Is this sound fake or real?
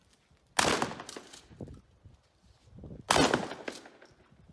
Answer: real